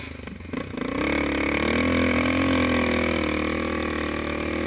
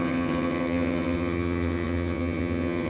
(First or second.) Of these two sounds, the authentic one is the first